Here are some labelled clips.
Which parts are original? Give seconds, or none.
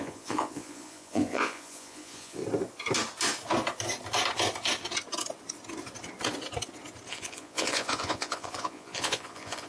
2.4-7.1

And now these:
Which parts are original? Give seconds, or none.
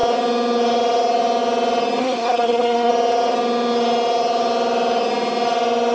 0.0-2.0; 2.9-5.9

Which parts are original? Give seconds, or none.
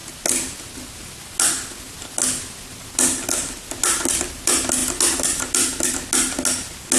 0.0-7.0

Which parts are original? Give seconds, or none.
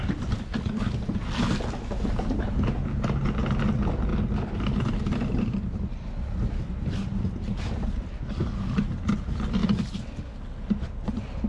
0.0-11.5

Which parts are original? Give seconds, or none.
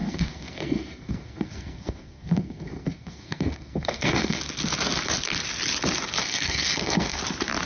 4.4-6.2; 7.2-7.7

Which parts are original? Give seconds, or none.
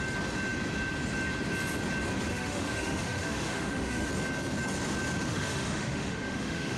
0.0-2.3; 4.1-5.3